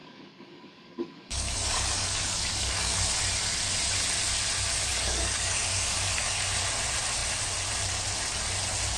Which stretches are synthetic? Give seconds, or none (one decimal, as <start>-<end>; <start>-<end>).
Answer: 0.0-3.0; 4.9-6.4